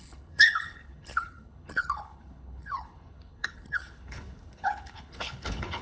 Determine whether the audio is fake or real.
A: fake